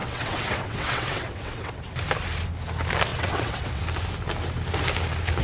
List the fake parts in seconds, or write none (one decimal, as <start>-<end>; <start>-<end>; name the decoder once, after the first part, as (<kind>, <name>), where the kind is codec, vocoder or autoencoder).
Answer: 0.0-1.7 (vocoder, WaveNeXt); 3.1-3.8